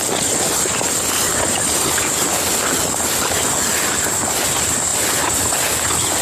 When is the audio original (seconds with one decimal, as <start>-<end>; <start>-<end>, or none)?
0.0-4.9; 5.4-6.2